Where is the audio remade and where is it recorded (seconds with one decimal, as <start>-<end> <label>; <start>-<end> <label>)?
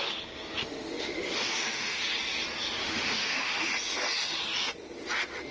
0.0-0.6 recorded; 0.6-2.0 remade; 2.0-2.8 recorded; 2.8-3.7 remade; 3.7-5.5 recorded